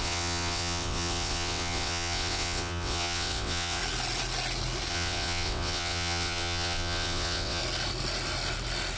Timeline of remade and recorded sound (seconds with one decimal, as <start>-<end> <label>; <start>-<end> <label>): 0.0-3.8 remade; 3.8-4.9 recorded; 4.9-7.6 remade; 7.6-9.0 recorded